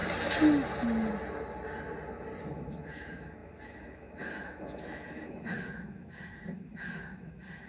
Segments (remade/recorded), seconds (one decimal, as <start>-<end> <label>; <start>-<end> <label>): 0.0-2.4 recorded; 2.4-7.7 remade